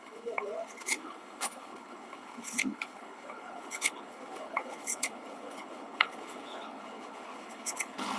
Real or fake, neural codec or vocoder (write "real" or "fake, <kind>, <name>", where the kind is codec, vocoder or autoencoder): fake, codec, HILCodec